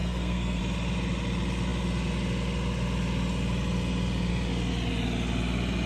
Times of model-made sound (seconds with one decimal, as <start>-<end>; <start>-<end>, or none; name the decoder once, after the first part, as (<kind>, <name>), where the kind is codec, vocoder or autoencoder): 0.0-0.6 (codec, SNAC)